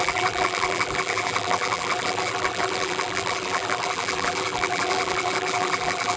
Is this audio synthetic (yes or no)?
yes